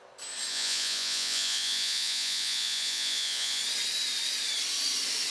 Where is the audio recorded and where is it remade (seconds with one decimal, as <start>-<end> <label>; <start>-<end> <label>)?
0.0-0.5 recorded; 0.5-3.6 remade; 3.6-5.3 recorded